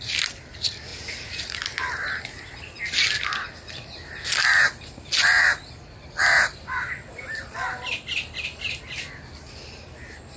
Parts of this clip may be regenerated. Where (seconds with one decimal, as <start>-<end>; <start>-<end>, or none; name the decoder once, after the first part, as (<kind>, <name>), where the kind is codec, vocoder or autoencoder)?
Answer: 0.9-1.6 (vocoder, Vocos)